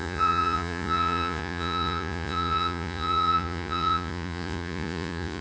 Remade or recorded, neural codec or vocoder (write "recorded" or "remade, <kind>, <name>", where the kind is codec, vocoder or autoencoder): remade, vocoder, Vocos